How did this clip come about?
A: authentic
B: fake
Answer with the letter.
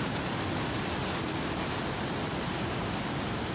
A